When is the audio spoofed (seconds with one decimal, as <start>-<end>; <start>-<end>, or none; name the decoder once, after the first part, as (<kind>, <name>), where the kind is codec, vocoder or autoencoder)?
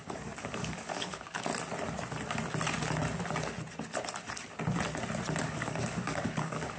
0.0-1.5 (codec, DAC); 5.4-6.8